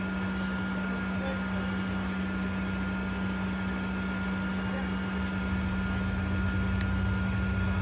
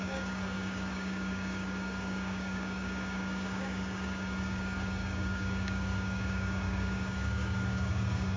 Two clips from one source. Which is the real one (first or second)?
first